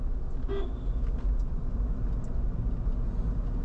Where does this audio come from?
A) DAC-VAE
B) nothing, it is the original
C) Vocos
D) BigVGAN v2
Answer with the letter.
B